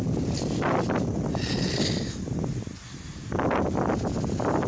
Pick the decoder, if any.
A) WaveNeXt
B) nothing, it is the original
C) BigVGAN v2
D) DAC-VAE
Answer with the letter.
B